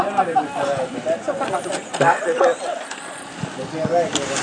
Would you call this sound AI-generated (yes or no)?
no